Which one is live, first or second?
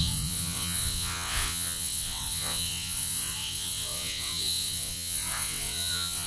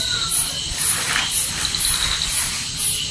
second